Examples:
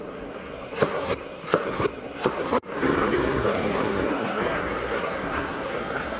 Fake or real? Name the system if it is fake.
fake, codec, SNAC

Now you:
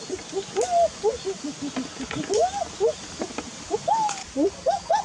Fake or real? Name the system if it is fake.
real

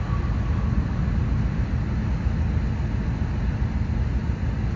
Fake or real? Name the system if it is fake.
real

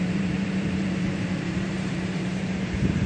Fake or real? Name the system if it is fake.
fake, vocoder, BigVGAN v2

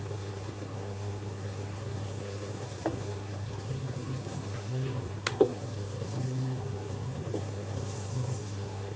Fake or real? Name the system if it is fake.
fake, codec, SNAC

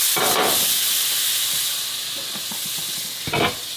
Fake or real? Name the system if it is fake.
real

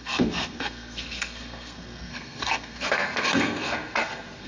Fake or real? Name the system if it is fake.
fake, codec, SNAC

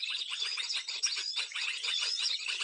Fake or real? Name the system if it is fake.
fake, vocoder, Vocos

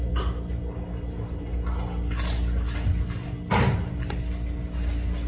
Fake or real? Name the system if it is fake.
real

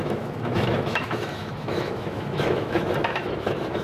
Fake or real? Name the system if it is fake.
fake, autoencoder, DAC-VAE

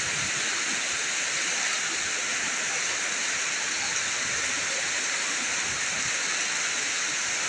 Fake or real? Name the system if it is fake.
real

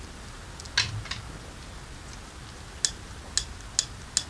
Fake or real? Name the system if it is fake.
real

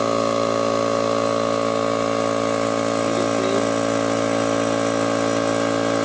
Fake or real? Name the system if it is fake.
real